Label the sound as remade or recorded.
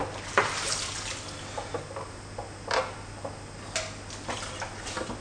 recorded